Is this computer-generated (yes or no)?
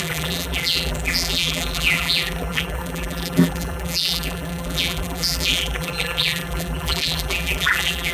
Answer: yes